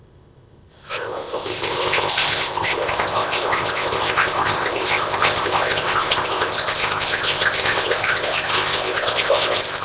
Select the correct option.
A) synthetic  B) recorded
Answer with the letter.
A